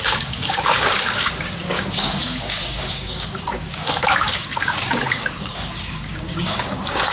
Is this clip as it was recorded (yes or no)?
no